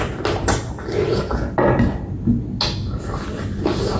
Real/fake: real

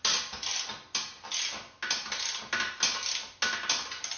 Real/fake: real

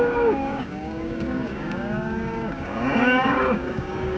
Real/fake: fake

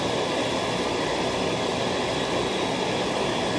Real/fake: real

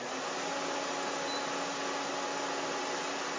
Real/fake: real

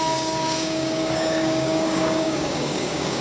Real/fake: fake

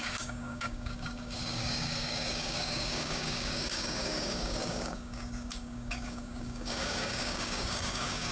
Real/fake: fake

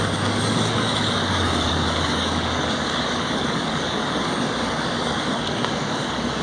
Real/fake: fake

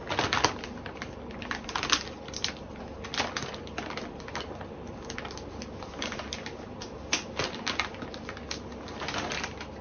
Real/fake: real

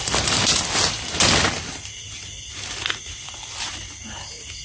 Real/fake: real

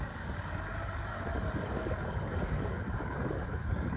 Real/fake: fake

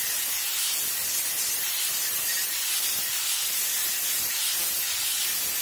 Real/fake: real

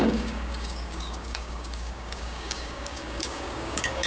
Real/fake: fake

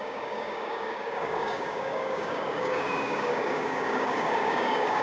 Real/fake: fake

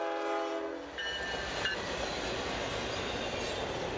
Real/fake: real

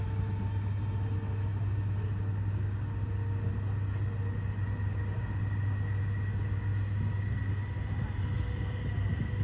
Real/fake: real